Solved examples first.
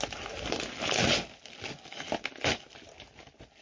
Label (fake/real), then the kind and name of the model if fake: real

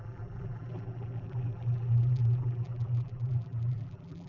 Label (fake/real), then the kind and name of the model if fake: fake, vocoder, BigVGAN v2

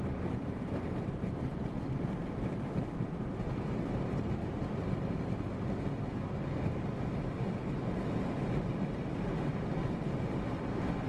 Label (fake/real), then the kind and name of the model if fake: fake, vocoder, BigVGAN v2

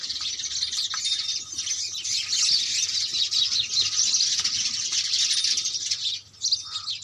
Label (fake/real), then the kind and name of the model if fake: real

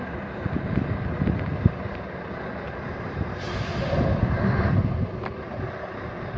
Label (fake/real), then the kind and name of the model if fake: real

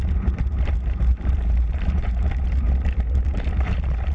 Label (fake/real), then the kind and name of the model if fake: fake, vocoder, BigVGAN v2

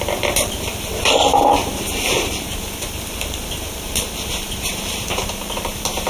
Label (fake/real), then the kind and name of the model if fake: fake, vocoder, BigVGAN v2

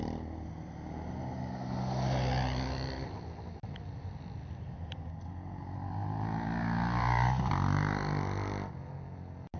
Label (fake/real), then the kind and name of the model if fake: real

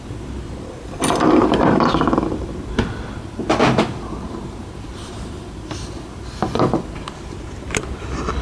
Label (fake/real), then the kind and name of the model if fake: real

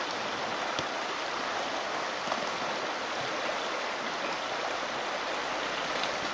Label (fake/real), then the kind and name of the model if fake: real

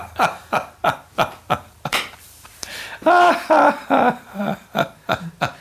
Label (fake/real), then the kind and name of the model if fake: fake, vocoder, BigVGAN v2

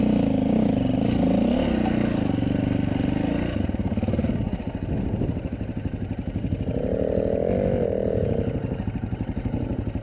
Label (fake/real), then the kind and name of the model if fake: real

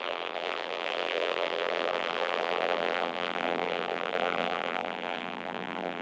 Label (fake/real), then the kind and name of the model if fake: fake, vocoder, BigVGAN v2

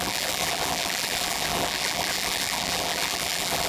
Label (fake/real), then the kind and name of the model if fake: fake, vocoder, BigVGAN v2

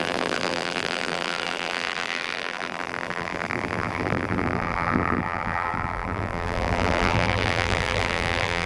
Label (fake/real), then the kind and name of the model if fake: fake, vocoder, BigVGAN v2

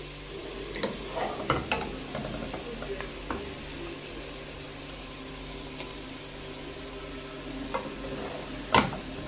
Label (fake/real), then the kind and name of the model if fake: real